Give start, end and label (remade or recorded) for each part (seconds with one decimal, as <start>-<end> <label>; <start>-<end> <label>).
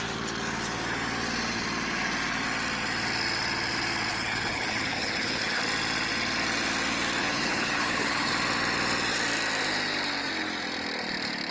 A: 0.0-4.1 recorded; 4.1-5.6 remade; 5.6-7.2 recorded; 7.2-8.3 remade; 8.3-11.5 recorded